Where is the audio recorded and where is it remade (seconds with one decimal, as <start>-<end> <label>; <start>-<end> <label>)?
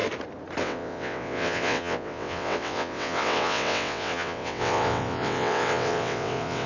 0.0-0.6 recorded; 0.6-6.7 remade